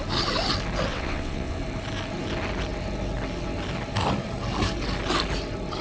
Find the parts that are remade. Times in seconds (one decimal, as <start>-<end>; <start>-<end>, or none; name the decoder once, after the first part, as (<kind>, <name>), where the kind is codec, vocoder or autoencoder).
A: 0.9-1.6 (vocoder, WaveNeXt)

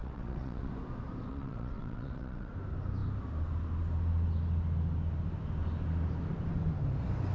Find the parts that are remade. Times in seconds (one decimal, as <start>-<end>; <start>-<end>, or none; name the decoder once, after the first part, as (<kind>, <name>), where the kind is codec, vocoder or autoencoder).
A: 0.0-0.7 (vocoder, WaveNeXt); 1.3-2.5